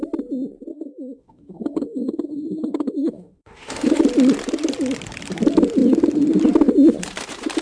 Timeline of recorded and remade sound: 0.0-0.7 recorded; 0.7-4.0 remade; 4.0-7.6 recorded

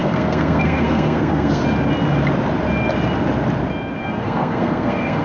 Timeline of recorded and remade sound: 0.0-1.6 remade; 1.6-4.0 recorded; 4.0-5.2 remade